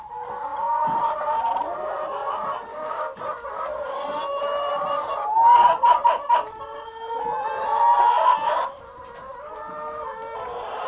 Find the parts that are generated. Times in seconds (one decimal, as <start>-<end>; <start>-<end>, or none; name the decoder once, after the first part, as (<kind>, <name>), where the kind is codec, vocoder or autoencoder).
2.7-3.2 (codec, DAC)